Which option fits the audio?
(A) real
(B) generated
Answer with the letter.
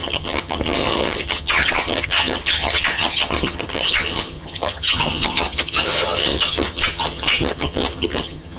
B